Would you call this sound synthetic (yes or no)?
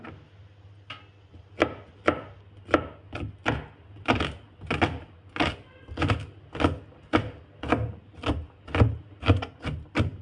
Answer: no